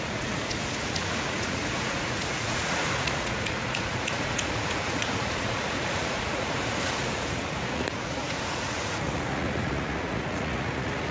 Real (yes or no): no